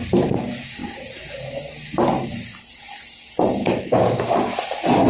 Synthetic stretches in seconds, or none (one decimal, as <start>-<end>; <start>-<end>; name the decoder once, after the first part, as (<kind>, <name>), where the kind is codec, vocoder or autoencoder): 3.6-4.2 (autoencoder, DAC-VAE)